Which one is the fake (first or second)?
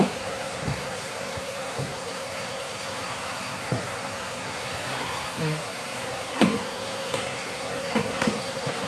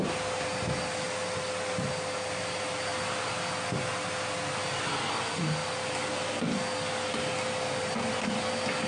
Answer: first